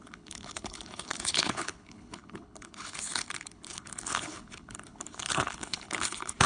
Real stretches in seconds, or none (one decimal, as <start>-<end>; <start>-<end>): none